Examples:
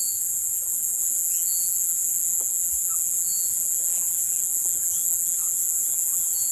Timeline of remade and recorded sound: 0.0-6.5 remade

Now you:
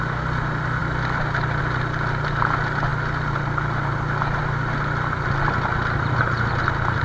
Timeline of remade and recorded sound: 0.0-0.8 recorded; 0.8-1.6 remade; 1.6-7.0 recorded

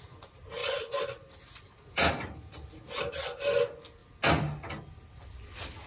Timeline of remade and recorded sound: 0.0-0.6 recorded; 0.6-2.7 remade; 2.7-5.9 recorded

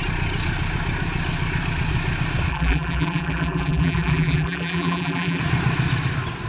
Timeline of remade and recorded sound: 0.0-2.5 recorded; 2.5-5.4 remade; 5.4-6.5 recorded

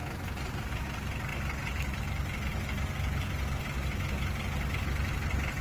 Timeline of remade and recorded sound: 0.0-5.6 recorded

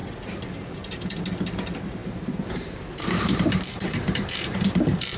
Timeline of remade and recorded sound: 0.0-1.2 remade; 1.2-2.0 recorded; 2.0-5.2 remade

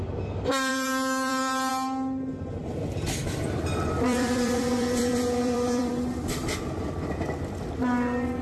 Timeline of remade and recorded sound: 0.0-0.7 recorded; 0.7-1.7 remade; 1.7-2.6 recorded; 2.6-5.9 remade; 5.9-8.4 recorded